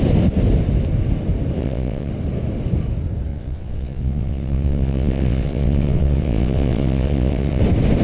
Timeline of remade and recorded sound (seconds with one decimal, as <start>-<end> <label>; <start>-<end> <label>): 0.0-1.6 recorded; 1.6-2.1 remade; 2.1-3.3 recorded; 3.3-7.6 remade; 7.6-8.0 recorded

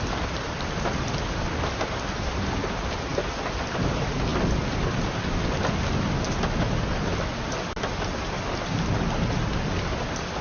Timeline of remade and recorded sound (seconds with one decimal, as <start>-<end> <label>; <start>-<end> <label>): 0.0-10.4 recorded